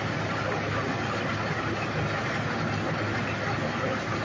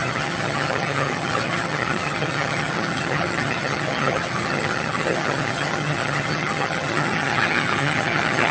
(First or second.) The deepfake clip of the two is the second